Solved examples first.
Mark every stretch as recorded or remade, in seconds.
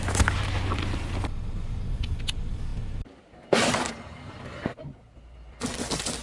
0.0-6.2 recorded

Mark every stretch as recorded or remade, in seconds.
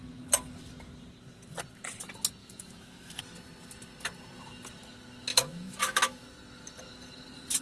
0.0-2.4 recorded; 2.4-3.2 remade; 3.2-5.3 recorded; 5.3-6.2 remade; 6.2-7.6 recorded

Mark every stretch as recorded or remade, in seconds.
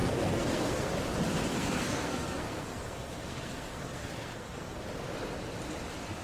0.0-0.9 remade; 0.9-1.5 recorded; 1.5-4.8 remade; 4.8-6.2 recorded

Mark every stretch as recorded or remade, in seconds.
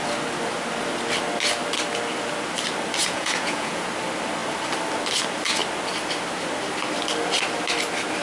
0.0-3.0 recorded; 3.0-3.9 remade; 3.9-8.2 recorded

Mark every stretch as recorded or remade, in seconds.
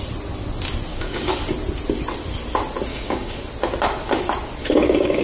0.0-0.9 recorded; 0.9-1.4 remade; 1.4-2.9 recorded; 2.9-3.4 remade; 3.4-4.6 recorded; 4.6-5.2 remade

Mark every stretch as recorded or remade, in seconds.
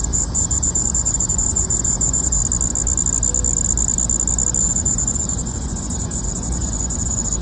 0.0-2.4 remade; 2.4-4.6 recorded; 4.6-7.4 remade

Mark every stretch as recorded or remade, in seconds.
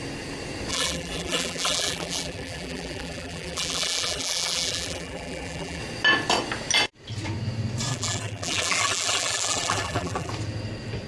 0.0-0.7 recorded; 0.7-5.8 remade; 5.8-7.9 recorded; 7.9-10.3 remade; 10.3-11.1 recorded